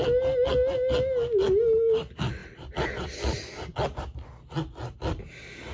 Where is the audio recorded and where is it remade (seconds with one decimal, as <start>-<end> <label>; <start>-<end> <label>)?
0.0-5.7 recorded

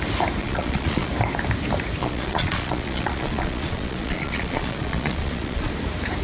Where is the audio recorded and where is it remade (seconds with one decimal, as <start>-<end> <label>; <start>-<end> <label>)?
0.0-0.4 recorded; 0.4-1.1 remade; 1.1-2.0 recorded; 2.0-5.7 remade; 5.7-6.2 recorded

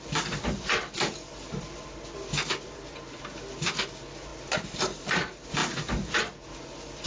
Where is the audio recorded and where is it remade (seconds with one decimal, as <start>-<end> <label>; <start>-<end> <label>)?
0.0-5.6 remade; 5.6-6.3 recorded; 6.3-7.1 remade

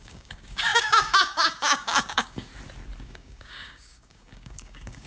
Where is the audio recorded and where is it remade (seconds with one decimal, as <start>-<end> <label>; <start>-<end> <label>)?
0.0-2.5 remade; 2.5-3.0 recorded; 3.0-5.1 remade

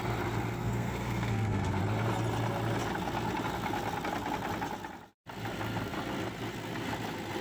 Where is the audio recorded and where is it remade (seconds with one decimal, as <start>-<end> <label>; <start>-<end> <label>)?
0.0-0.6 recorded; 0.6-1.8 remade; 1.8-7.4 recorded

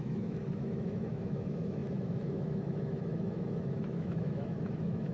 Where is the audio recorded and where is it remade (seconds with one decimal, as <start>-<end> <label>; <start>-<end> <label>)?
0.0-5.1 remade

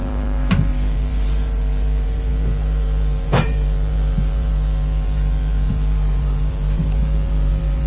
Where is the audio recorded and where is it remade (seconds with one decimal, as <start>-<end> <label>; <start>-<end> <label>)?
0.0-7.9 remade

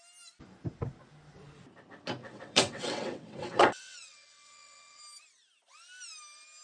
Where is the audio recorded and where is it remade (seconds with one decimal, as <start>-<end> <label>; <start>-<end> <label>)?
0.0-2.2 recorded; 2.2-5.0 remade; 5.0-6.6 recorded